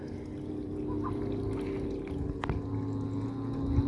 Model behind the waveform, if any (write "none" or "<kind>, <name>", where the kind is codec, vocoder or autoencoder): none